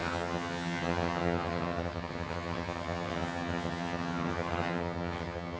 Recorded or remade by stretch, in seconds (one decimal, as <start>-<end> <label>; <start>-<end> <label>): 0.0-5.6 remade